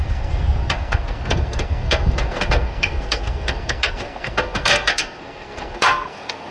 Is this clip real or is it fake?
fake